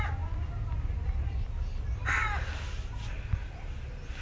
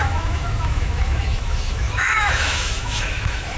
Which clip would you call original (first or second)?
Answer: first